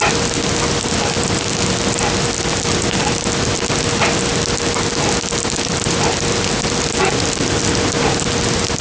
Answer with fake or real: real